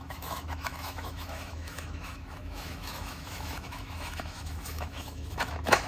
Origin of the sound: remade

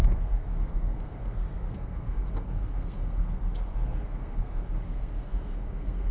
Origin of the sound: remade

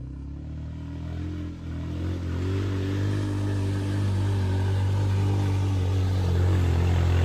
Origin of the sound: recorded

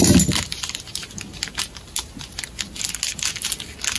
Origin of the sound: recorded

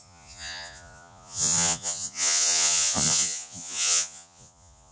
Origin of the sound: remade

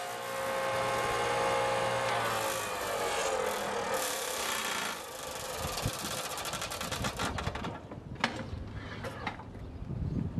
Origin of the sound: recorded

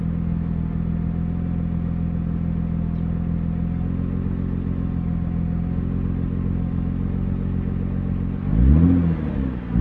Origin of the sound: recorded